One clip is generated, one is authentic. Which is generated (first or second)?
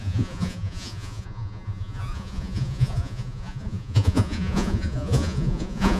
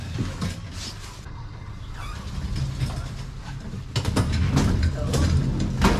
first